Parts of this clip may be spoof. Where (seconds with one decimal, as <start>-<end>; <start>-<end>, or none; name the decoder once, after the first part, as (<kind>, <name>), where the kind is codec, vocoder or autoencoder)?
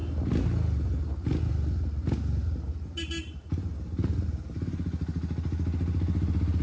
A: none